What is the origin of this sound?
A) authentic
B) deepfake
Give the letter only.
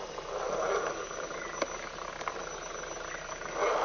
A